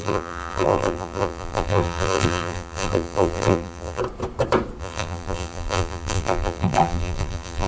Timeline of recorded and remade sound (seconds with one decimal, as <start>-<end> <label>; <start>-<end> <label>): 0.0-4.0 remade; 4.0-4.8 recorded; 4.8-7.7 remade